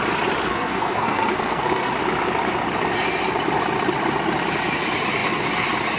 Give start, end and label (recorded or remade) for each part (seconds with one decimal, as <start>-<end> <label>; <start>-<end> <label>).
0.0-0.5 recorded; 0.5-1.9 remade; 1.9-6.0 recorded